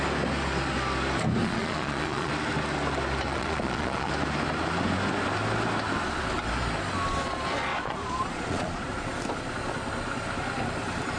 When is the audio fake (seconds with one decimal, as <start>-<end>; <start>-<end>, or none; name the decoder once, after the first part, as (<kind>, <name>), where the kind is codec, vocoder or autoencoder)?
1.4-2.3 (vocoder, Vocos); 3.3-4.1; 7.7-8.9